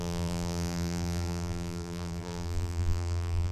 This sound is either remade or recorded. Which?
remade